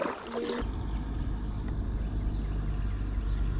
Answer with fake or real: real